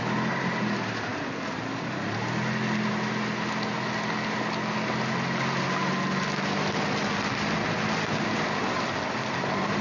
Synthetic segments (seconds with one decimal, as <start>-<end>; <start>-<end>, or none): none